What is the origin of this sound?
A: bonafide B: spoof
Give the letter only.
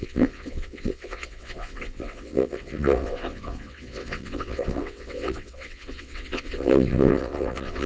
B